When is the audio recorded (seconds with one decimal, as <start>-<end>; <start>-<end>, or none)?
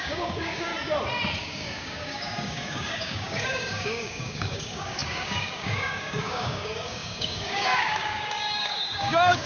0.7-1.4